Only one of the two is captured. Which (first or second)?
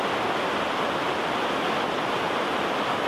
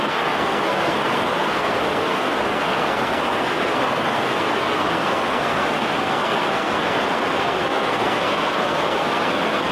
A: first